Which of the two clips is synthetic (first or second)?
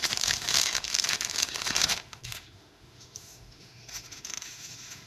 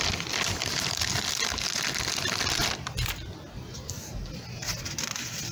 first